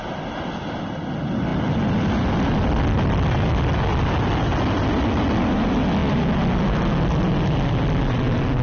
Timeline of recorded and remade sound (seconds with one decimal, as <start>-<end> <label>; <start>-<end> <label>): 0.0-8.6 recorded